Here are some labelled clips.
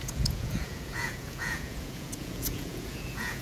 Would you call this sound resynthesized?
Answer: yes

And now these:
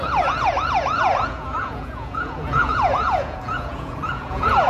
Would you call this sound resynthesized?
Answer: yes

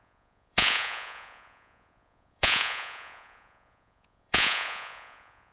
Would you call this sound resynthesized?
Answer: yes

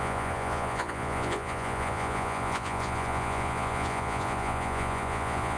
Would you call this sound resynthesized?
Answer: yes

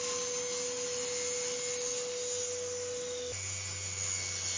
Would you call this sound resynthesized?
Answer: no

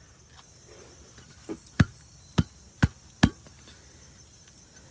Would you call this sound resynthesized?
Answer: no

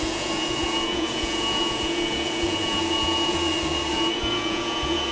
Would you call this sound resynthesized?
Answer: yes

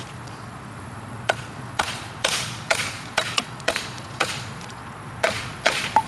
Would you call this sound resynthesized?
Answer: yes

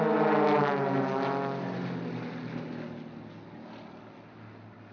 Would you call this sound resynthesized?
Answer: no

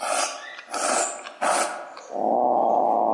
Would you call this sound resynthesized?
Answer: no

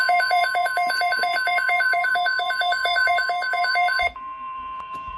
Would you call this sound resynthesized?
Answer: yes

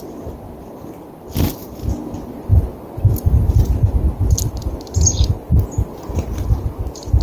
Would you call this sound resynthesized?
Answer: no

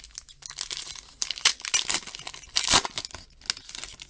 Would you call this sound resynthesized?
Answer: no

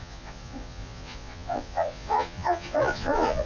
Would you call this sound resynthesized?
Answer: yes